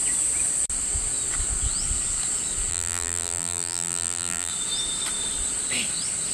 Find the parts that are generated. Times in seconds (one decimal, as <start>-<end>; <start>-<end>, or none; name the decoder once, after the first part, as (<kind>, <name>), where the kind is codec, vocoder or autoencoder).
2.7-4.5 (vocoder, BigVGAN v2)